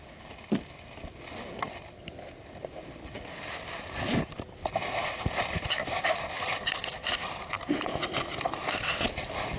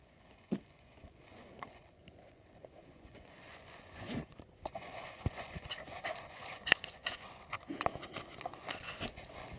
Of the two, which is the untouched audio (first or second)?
first